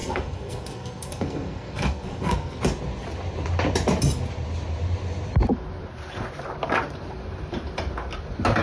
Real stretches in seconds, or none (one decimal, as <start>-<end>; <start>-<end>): 2.6-8.6